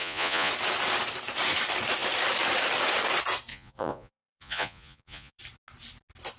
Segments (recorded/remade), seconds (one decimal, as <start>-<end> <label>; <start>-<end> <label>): 0.0-0.5 remade; 0.5-3.5 recorded; 3.5-5.4 remade; 5.4-6.4 recorded